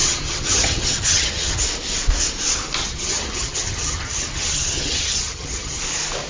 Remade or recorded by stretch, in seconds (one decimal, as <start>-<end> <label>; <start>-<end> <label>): 0.0-1.6 remade; 1.6-2.8 recorded; 2.8-5.8 remade; 5.8-6.3 recorded